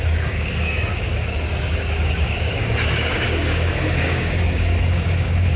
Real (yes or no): no